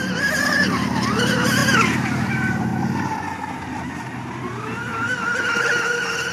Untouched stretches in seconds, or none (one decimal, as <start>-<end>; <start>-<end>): 2.7-3.8; 4.9-6.3